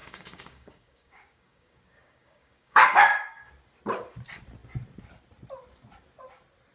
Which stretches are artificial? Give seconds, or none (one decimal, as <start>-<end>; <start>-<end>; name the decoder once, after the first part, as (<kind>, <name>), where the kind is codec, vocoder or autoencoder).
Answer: 0.0-3.5 (codec, DAC)